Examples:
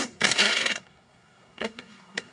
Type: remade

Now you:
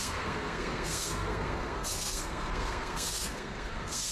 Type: remade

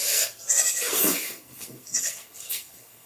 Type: remade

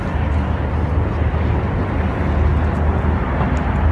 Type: recorded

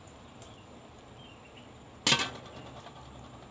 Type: recorded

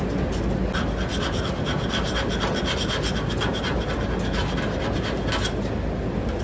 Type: recorded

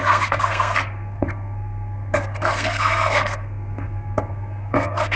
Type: remade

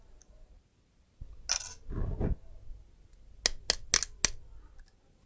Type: recorded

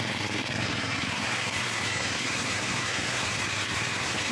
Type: remade